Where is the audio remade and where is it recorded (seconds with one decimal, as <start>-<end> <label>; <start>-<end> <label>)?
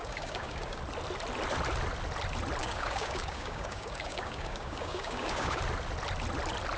0.0-0.8 remade; 0.8-2.6 recorded; 2.6-5.6 remade; 5.6-6.8 recorded